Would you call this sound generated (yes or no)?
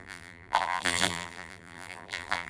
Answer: yes